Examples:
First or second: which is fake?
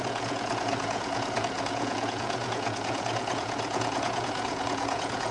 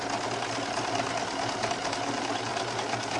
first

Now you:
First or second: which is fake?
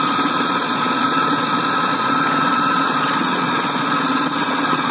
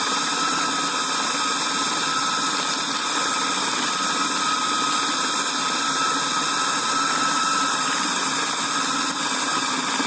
first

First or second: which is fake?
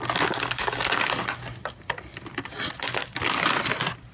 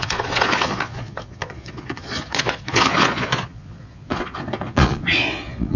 second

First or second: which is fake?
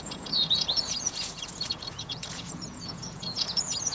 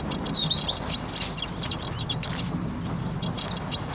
first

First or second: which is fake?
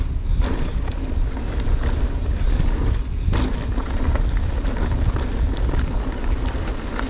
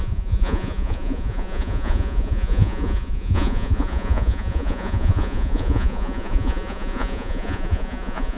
second